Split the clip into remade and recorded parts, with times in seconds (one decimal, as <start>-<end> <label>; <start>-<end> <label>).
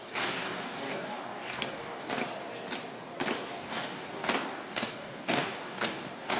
0.0-2.2 remade; 2.2-3.5 recorded; 3.5-6.4 remade